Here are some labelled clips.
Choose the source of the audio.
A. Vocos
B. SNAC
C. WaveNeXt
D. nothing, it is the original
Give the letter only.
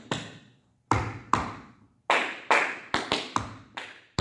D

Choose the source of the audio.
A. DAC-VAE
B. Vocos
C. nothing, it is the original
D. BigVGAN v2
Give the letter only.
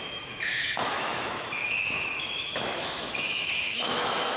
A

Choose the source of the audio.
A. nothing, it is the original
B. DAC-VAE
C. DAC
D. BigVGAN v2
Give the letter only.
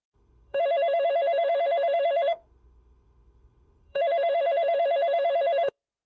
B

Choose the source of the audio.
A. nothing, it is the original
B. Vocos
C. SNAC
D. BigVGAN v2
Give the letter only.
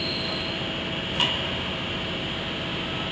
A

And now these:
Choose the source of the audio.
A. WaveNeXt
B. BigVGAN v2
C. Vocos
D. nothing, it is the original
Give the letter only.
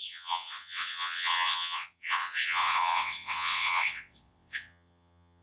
A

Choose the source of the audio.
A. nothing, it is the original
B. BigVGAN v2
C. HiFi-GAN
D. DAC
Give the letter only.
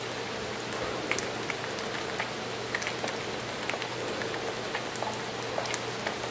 A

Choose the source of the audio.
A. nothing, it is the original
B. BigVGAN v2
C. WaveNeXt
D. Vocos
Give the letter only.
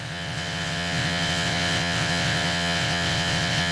C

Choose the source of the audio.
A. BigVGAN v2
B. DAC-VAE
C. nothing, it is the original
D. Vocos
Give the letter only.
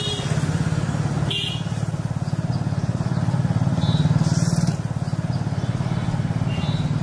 C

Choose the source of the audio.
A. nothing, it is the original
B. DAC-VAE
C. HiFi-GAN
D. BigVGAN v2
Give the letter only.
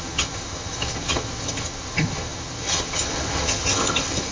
C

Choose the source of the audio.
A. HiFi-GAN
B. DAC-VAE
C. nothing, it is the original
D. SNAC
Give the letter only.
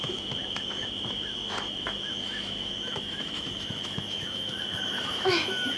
B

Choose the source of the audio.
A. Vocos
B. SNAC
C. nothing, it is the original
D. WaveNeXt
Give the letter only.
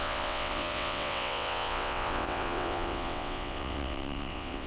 D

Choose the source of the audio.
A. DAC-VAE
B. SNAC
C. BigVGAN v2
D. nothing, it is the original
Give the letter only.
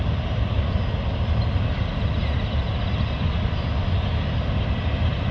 D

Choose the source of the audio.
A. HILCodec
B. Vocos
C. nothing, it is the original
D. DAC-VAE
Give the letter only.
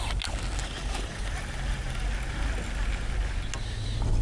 C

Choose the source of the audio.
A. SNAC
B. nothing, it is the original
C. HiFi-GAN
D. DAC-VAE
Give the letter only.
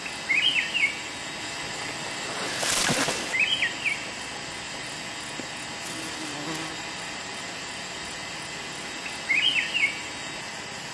B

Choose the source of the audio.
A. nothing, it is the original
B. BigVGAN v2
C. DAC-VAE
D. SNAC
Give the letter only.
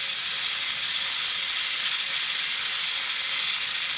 A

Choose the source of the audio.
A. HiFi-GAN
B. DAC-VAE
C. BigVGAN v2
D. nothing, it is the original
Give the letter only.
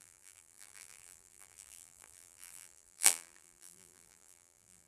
C